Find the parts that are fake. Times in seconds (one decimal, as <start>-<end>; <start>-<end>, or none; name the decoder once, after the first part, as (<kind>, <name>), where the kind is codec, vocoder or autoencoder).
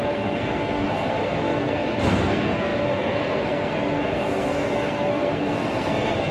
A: 0.0-6.3 (codec, SNAC)